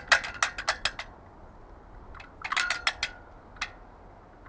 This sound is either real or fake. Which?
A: real